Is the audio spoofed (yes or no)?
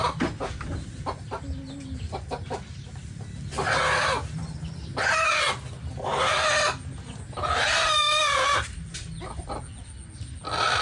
no